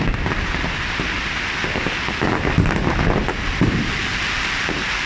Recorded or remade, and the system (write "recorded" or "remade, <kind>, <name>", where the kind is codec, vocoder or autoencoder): recorded